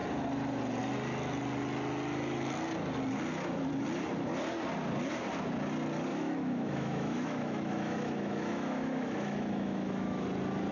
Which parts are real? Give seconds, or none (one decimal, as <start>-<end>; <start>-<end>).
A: 0.0-6.1; 10.2-10.7